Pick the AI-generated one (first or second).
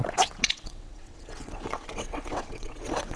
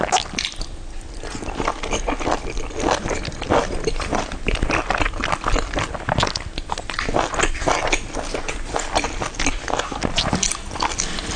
first